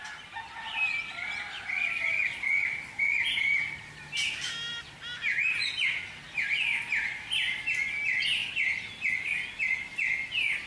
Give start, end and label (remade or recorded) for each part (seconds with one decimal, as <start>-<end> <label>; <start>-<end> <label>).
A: 0.0-10.7 recorded